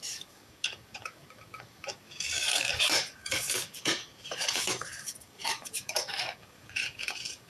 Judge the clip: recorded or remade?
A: remade